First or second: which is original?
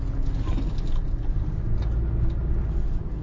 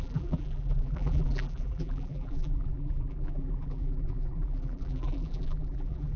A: first